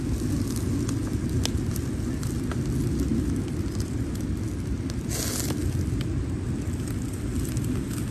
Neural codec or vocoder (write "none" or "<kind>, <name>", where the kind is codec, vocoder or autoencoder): none